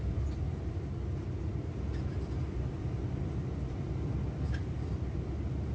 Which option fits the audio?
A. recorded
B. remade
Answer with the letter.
A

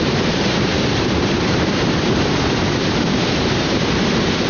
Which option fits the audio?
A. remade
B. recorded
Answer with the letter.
A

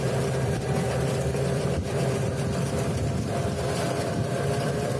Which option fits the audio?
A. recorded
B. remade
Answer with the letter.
B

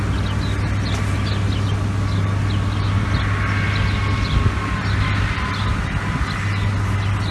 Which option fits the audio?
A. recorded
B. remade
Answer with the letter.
A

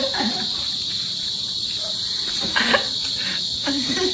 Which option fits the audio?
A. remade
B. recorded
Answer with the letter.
B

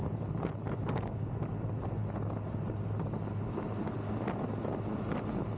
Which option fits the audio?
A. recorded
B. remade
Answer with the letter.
A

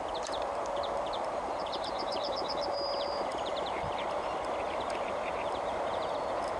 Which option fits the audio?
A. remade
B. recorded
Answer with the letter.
A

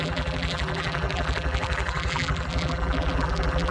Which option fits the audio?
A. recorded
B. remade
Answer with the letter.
B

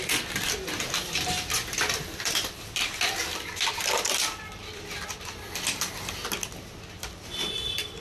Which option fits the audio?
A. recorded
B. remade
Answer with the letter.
A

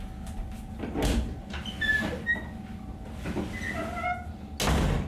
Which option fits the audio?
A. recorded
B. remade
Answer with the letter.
A